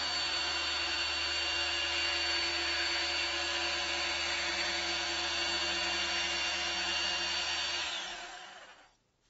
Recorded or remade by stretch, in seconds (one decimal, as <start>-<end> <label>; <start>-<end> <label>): 0.0-9.3 recorded